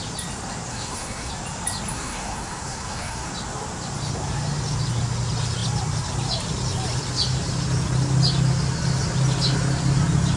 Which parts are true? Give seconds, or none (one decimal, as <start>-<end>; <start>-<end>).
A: 0.0-0.7; 1.3-1.9; 3.3-10.4